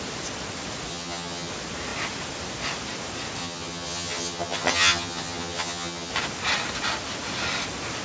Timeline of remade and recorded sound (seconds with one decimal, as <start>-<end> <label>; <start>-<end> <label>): 0.0-0.9 recorded; 0.9-1.5 remade; 1.5-3.4 recorded; 3.4-6.1 remade; 6.1-8.0 recorded